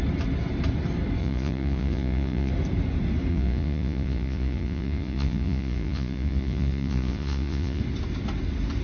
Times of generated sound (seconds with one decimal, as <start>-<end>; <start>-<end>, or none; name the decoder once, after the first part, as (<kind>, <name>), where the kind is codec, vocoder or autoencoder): 1.2-2.5 (vocoder, Vocos); 3.3-7.8